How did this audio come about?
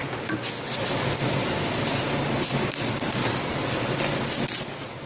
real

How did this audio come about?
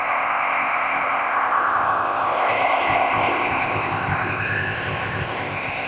fake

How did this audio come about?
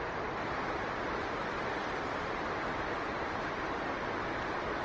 real